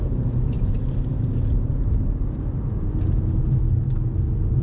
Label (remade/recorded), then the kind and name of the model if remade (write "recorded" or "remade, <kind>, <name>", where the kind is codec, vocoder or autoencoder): remade, vocoder, BigVGAN v2